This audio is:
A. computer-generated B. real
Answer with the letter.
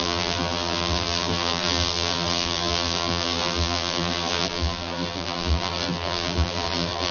A